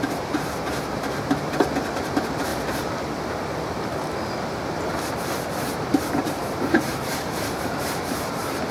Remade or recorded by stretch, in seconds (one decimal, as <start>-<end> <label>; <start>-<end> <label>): 0.0-2.5 remade; 2.5-6.1 recorded; 6.1-8.7 remade

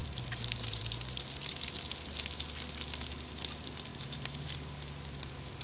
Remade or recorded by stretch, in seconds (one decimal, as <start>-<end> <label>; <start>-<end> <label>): 0.0-0.8 remade; 0.8-3.9 recorded; 3.9-5.0 remade; 5.0-5.6 recorded